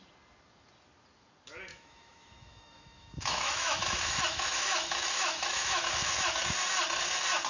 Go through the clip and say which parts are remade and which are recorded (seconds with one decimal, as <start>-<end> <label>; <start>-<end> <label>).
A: 0.0-1.7 recorded; 1.7-6.2 remade; 6.2-7.5 recorded